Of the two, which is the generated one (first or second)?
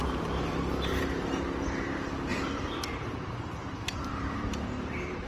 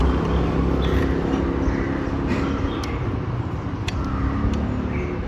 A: first